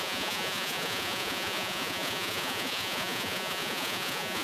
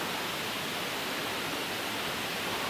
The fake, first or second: first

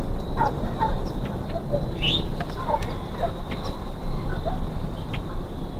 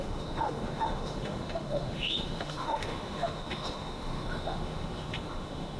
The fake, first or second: second